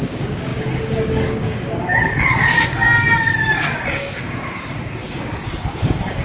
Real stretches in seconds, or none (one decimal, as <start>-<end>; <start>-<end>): none